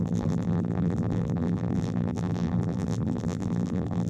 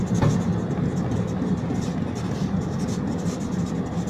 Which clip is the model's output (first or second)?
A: first